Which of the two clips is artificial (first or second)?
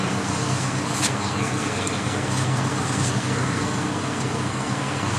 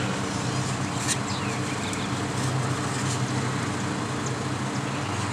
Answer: first